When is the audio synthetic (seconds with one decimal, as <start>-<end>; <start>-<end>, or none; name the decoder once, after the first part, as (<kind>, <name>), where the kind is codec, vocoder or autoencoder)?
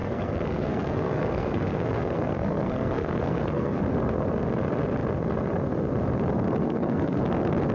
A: 0.0-3.8 (codec, SNAC); 6.6-7.2